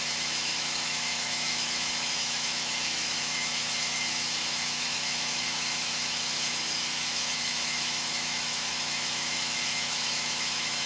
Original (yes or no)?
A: no